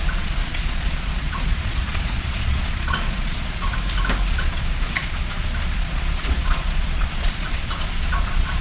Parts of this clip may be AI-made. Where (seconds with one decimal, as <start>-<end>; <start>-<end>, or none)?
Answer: 0.0-3.7; 4.3-8.6